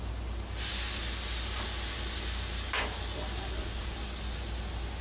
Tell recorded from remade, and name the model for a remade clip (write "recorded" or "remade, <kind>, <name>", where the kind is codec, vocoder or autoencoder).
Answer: recorded